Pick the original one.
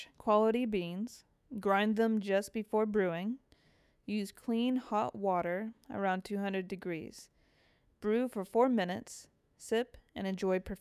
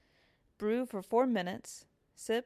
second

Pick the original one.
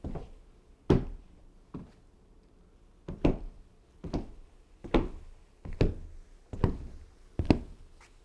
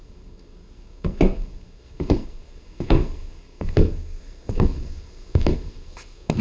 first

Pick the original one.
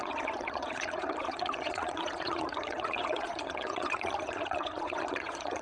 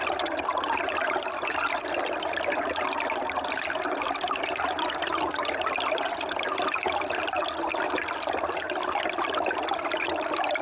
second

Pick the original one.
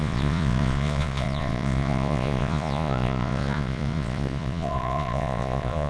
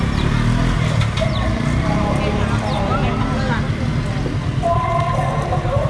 second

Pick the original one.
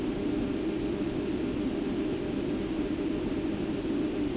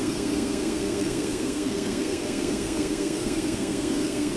first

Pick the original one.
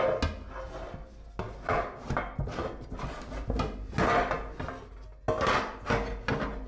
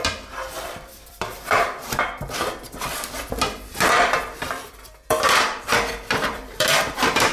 first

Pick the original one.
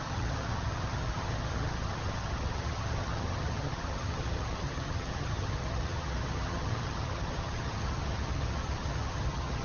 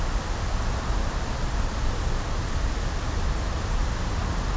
second